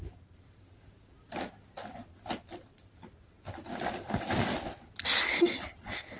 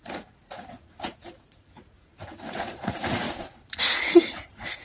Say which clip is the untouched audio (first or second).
first